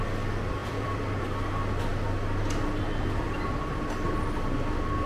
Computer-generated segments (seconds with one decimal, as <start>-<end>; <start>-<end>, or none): 0.6-1.2